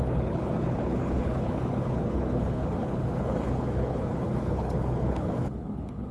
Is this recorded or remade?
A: remade